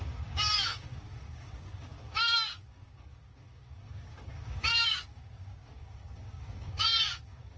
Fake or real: fake